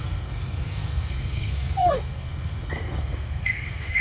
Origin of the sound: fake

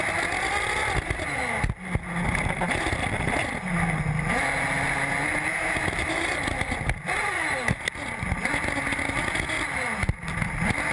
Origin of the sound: real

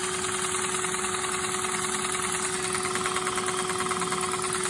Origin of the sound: real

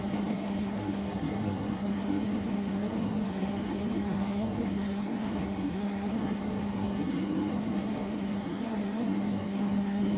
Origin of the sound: fake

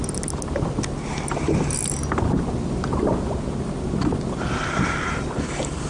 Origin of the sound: real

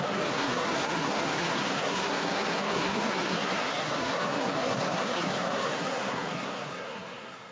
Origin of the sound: fake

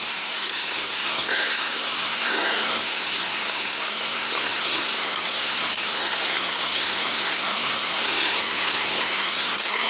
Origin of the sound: fake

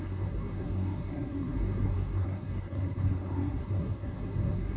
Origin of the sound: fake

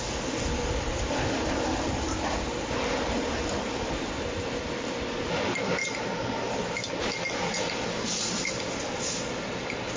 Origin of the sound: real